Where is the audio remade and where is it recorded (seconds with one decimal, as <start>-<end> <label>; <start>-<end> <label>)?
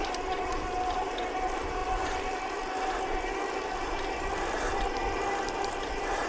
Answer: 0.0-1.8 remade; 1.8-5.6 recorded; 5.6-6.3 remade